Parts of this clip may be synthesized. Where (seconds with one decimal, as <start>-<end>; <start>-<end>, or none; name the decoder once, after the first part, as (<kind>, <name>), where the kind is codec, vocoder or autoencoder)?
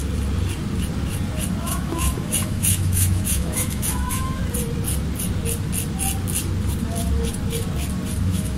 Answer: 1.6-4.4 (autoencoder, DAC-VAE); 8.2-8.6